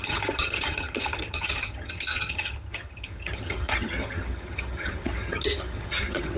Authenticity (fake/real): fake